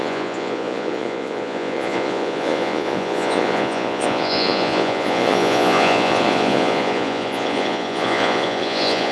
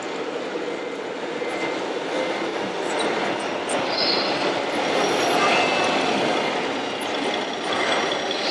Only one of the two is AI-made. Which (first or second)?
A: first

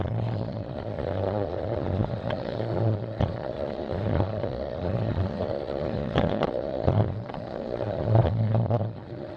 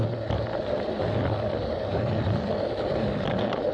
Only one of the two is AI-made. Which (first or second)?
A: first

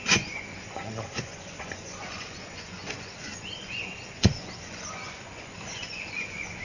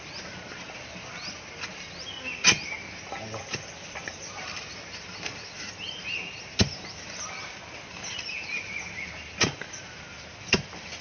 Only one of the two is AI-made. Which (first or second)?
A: first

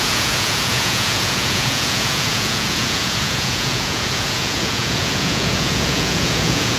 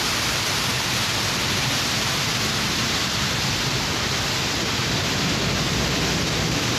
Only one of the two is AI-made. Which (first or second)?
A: first